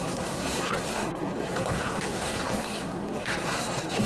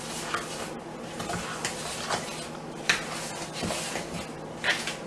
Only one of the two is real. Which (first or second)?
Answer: second